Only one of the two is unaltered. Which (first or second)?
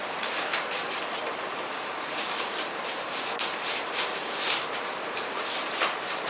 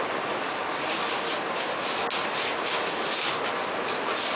second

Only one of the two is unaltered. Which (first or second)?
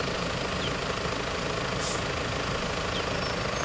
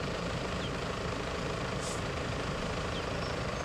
first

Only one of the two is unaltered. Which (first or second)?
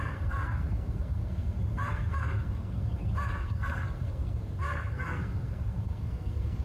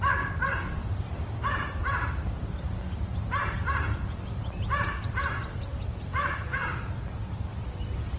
second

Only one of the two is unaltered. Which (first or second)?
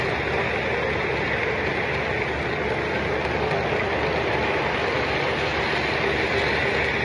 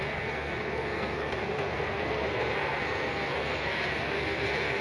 first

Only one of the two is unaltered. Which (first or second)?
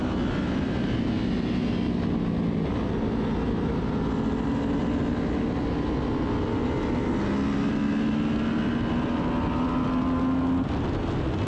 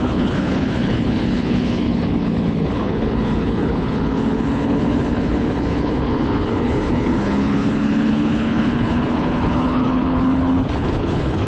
first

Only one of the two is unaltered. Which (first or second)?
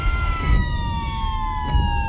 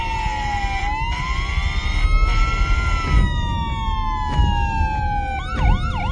second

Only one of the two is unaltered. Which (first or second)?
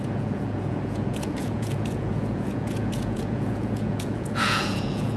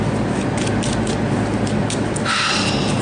second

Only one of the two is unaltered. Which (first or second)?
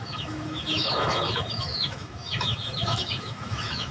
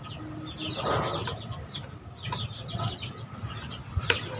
second